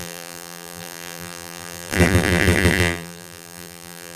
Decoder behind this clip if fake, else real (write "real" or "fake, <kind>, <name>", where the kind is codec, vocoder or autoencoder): fake, vocoder, BigVGAN v2